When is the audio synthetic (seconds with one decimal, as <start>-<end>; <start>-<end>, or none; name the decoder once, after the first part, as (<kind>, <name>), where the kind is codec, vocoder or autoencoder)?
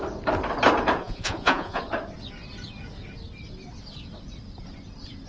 1.0-1.8 (vocoder, Vocos)